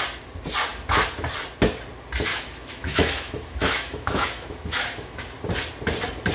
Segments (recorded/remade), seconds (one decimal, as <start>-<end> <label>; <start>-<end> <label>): 0.0-2.3 recorded; 2.3-5.2 remade; 5.2-6.3 recorded